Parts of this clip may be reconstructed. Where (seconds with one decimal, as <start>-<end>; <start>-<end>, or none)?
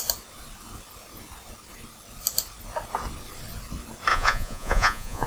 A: 4.1-5.3